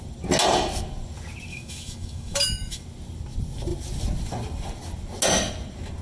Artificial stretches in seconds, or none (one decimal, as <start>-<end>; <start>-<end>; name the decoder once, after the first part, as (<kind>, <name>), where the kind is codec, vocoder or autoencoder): 1.5-2.8 (autoencoder, DAC-VAE)